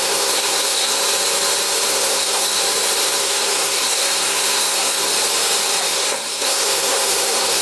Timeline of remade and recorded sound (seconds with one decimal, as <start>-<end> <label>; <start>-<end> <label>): 0.0-1.0 remade; 1.0-1.9 recorded; 1.9-2.6 remade; 2.6-3.2 recorded; 3.2-5.1 remade; 5.1-5.9 recorded; 5.9-7.6 remade